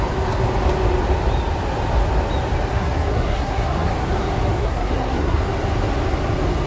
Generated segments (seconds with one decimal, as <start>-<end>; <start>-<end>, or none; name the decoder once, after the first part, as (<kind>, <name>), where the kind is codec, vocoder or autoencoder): 2.7-3.9 (codec, SNAC); 4.6-5.4